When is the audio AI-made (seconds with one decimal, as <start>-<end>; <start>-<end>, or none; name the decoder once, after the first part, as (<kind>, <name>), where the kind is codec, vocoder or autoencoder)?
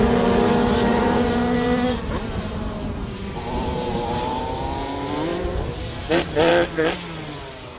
0.9-4.4 (vocoder, BigVGAN v2); 5.3-6.5